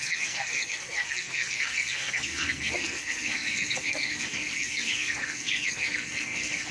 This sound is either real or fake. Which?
fake